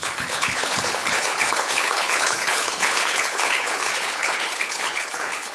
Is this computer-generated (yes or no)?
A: yes